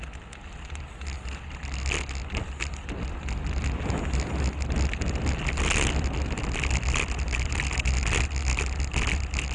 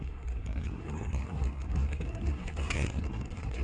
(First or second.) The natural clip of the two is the first